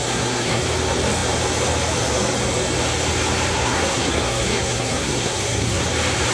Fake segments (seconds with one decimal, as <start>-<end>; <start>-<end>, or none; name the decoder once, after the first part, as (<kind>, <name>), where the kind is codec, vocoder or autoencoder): 0.0-0.6 (codec, SNAC); 3.5-5.8